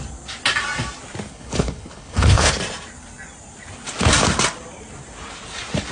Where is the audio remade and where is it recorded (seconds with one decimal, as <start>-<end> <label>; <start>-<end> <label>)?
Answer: 0.0-1.3 recorded; 1.3-2.5 remade; 2.5-5.9 recorded

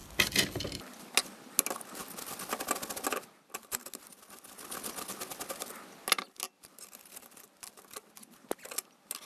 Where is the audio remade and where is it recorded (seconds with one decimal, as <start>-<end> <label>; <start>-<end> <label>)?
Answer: 0.0-9.3 recorded

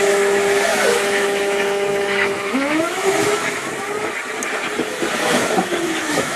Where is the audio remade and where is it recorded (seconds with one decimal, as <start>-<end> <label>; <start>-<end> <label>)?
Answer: 0.0-0.7 recorded; 0.7-3.7 remade; 3.7-5.2 recorded; 5.2-6.4 remade

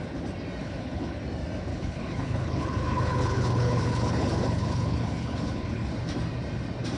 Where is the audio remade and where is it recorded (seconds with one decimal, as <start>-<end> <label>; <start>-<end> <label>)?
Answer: 0.0-0.6 recorded; 0.6-1.2 remade; 1.2-1.7 recorded; 1.7-5.9 remade; 5.9-7.0 recorded

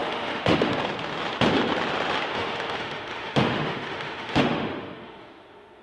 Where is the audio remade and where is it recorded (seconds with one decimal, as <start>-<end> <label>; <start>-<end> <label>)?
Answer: 0.0-0.8 remade; 0.8-2.3 recorded; 2.3-5.8 remade

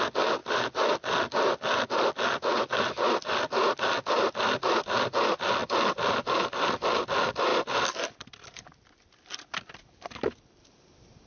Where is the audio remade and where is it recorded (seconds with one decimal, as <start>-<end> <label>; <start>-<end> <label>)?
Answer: 0.0-5.6 recorded; 5.6-6.3 remade; 6.3-7.5 recorded; 7.5-10.5 remade; 10.5-11.3 recorded

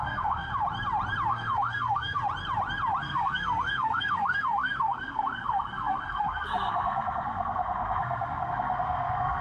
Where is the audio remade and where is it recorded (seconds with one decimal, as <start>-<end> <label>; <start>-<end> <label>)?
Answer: 0.0-0.5 remade; 0.5-1.3 recorded; 1.3-2.2 remade; 2.2-3.0 recorded; 3.0-9.4 remade